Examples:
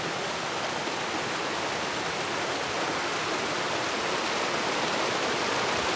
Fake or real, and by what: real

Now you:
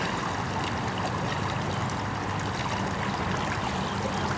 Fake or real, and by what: real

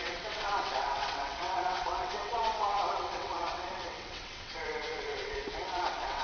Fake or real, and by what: fake, vocoder, WaveNeXt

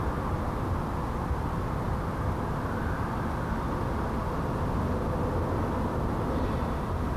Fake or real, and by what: real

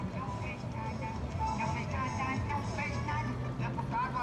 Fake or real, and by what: real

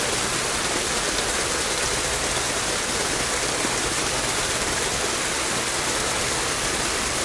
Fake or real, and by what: real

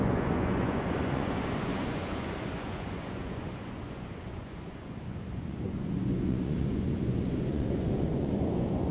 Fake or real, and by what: fake, vocoder, Vocos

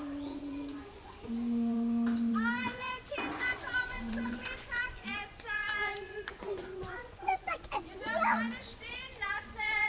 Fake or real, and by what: fake, vocoder, Vocos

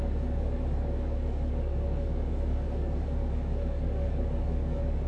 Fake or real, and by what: fake, codec, DAC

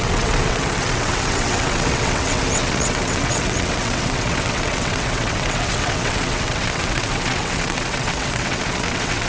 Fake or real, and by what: fake, vocoder, WaveNeXt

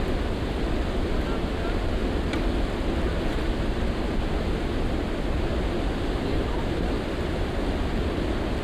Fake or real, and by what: real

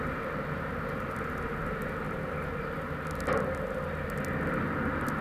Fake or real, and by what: real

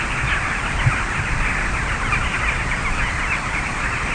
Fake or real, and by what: real